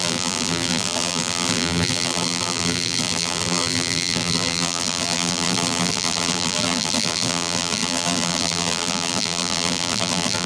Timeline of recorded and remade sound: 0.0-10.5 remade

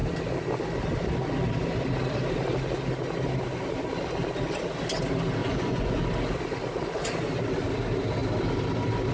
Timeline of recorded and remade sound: 0.0-5.4 recorded; 5.4-6.0 remade; 6.0-9.1 recorded

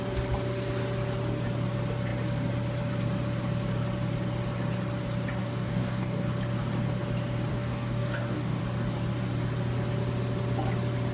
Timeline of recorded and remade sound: 0.0-5.4 recorded; 5.4-6.3 remade; 6.3-7.5 recorded; 7.5-8.6 remade; 8.6-11.1 recorded